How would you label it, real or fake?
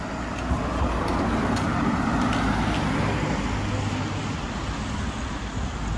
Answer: real